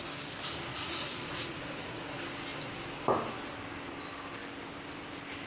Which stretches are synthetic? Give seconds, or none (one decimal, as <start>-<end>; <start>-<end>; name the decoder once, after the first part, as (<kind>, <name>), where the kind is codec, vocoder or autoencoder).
0.7-2.0 (vocoder, Vocos)